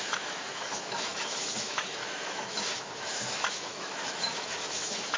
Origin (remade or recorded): remade